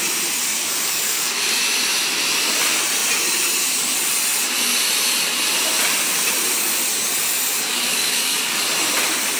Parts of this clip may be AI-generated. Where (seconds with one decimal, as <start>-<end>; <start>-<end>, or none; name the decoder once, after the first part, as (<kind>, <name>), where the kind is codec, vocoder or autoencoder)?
0.5-1.6 (codec, DAC); 7.7-8.6